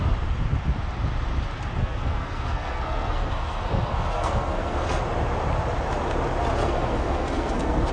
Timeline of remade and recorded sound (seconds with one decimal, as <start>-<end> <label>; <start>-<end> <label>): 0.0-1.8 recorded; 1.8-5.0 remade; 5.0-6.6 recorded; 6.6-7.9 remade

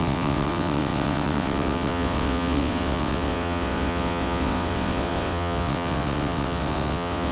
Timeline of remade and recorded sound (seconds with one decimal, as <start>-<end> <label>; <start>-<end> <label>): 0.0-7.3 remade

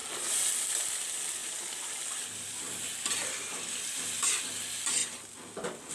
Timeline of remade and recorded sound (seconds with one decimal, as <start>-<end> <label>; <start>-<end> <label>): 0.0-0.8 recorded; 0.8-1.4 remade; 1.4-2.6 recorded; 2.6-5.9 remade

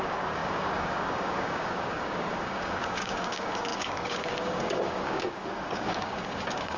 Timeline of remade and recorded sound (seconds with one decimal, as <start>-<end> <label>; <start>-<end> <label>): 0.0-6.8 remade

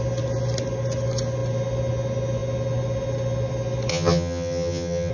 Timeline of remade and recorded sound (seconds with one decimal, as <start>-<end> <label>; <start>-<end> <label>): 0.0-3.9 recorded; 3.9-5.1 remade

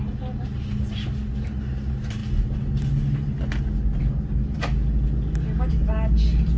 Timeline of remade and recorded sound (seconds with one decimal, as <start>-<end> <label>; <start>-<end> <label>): 0.0-6.6 recorded

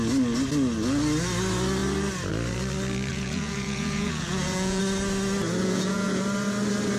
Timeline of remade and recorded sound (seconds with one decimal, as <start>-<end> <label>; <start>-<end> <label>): 0.0-3.1 recorded; 3.1-4.8 remade; 4.8-5.6 recorded; 5.6-6.2 remade; 6.2-7.0 recorded